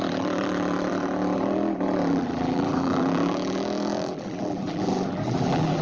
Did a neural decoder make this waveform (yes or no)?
yes